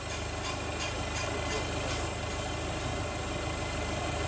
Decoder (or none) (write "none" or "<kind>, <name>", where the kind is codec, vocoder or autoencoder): none